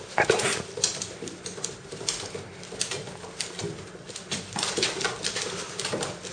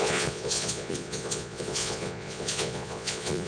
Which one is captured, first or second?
first